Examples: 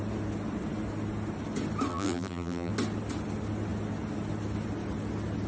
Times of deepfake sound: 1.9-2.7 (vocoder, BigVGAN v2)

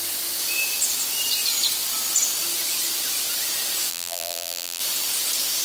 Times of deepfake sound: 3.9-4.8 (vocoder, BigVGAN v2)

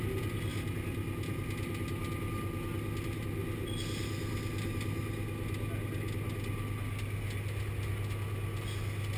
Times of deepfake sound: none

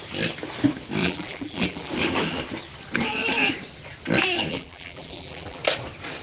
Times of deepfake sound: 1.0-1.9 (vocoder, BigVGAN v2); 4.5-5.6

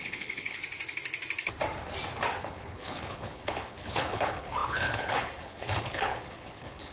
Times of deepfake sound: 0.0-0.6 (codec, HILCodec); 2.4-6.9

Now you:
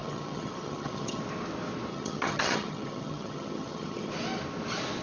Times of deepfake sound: 0.0-1.2 (vocoder, HiFi-GAN); 1.9-4.1